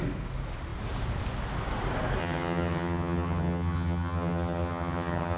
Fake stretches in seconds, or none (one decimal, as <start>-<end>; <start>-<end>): 2.2-5.4